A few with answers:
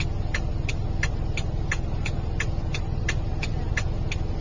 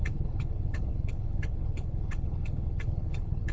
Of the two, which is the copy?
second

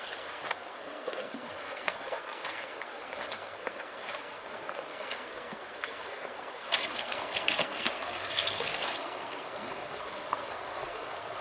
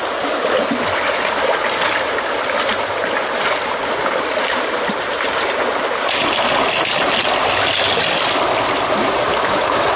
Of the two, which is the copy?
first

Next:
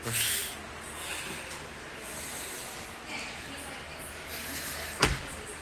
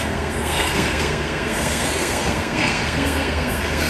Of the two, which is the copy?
second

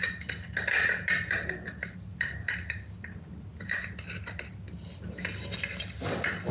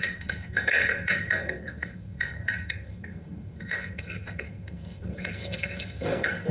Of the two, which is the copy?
second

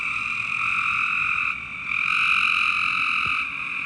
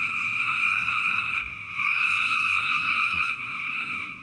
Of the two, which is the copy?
second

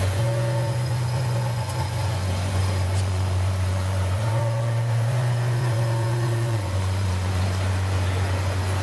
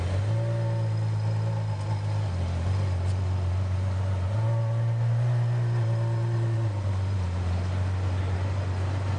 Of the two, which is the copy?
first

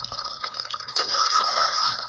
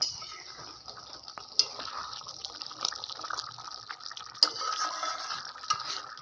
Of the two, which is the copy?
first